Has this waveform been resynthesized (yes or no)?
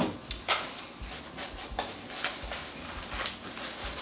no